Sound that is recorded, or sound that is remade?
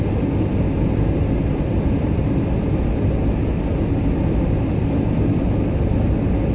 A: recorded